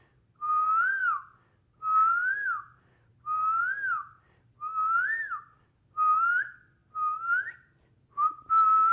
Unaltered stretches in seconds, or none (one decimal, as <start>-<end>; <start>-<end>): 0.0-8.9